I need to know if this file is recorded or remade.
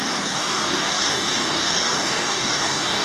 remade